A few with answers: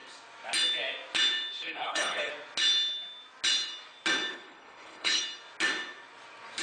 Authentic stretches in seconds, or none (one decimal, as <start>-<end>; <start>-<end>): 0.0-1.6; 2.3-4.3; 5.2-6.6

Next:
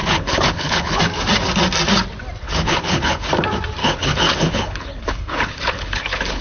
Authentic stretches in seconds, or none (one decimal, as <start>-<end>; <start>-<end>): 1.0-2.4; 3.3-3.8

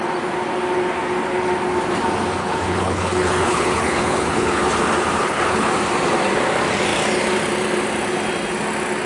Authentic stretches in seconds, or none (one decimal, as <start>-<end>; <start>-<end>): 0.0-2.4; 4.6-5.2; 5.7-9.1

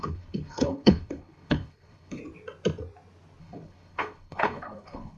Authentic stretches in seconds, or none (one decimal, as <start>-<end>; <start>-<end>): 2.2-3.4